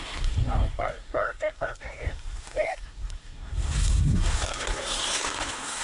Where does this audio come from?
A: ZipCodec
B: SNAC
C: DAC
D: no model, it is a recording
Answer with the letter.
B